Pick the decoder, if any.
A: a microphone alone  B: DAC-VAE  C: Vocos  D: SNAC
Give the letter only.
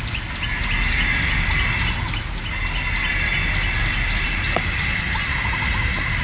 A